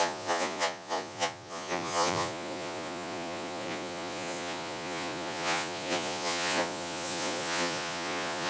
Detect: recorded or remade remade